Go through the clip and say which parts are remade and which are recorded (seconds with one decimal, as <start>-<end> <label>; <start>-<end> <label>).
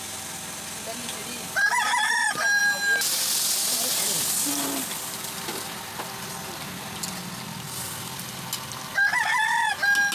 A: 0.0-10.1 recorded